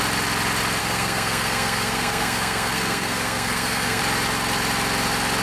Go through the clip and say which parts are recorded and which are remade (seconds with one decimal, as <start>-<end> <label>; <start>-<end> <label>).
0.0-0.8 recorded; 0.8-4.0 remade; 4.0-5.4 recorded